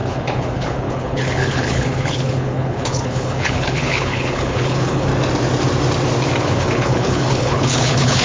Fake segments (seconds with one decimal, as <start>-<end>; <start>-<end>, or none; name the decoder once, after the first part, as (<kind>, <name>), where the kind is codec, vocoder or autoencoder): 0.0-5.1 (codec, HILCodec); 6.4-8.2